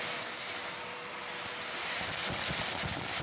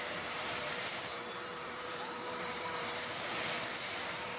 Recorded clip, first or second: first